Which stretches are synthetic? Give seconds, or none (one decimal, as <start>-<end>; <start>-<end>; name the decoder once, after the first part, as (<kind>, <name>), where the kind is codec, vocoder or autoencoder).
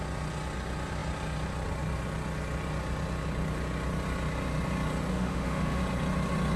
5.1-5.8 (autoencoder, DAC-VAE)